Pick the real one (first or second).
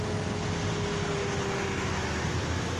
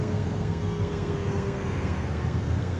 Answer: first